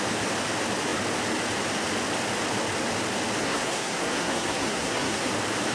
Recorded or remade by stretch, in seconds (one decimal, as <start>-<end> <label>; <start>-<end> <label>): 0.0-3.4 recorded; 3.4-5.3 remade; 5.3-5.7 recorded